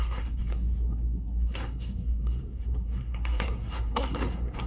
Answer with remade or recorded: remade